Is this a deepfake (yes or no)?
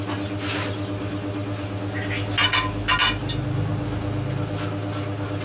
no